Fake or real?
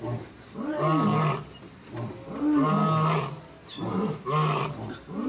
real